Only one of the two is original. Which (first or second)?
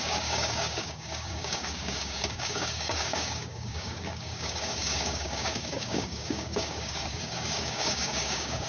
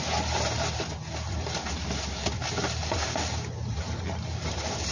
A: second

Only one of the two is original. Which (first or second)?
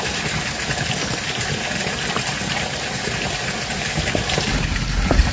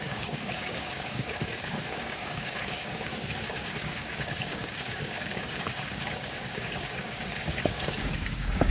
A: first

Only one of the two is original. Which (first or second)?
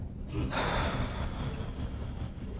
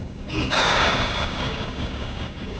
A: first